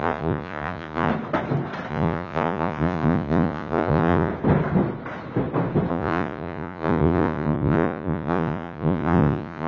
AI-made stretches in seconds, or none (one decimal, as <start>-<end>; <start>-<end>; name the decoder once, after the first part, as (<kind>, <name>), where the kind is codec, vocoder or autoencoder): 0.0-1.1 (vocoder, Vocos); 1.9-4.3; 5.9-9.7